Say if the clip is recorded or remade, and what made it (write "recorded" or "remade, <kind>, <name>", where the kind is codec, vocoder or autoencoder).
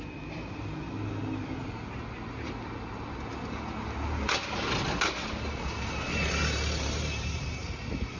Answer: recorded